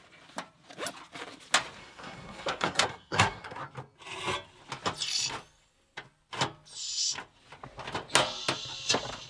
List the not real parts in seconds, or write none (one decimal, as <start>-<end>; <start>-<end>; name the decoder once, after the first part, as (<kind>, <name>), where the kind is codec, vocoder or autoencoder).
1.8-3.6 (codec, SNAC)